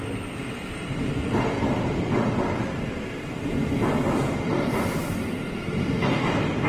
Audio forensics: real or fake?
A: real